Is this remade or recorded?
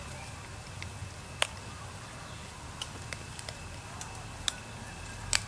recorded